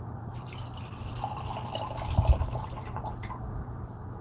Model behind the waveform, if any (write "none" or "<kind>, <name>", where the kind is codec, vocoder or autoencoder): vocoder, BigVGAN v2